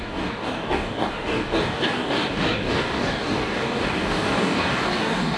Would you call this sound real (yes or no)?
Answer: no